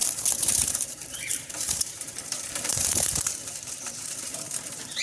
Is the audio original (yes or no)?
no